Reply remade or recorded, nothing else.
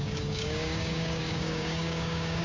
remade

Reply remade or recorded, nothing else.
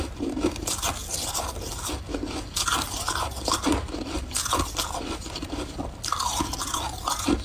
recorded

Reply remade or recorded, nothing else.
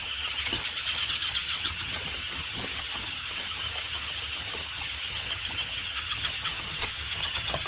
remade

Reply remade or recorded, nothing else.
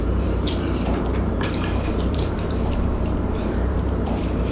remade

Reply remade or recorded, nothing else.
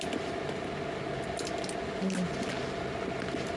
recorded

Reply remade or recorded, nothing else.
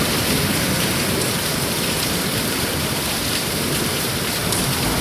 remade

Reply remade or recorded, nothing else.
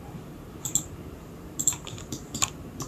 remade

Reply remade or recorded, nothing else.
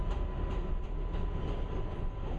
recorded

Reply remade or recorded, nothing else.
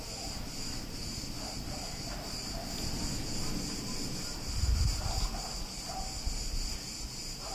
recorded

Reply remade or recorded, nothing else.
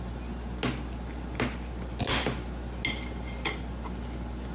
recorded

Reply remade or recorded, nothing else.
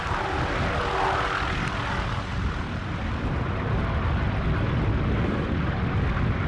recorded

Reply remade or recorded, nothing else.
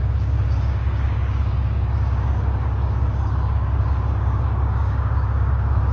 remade